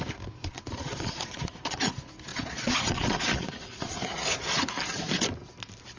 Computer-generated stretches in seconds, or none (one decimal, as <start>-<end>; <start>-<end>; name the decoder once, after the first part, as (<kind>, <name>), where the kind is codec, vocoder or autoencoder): 0.4-1.9 (vocoder, Vocos); 2.3-4.6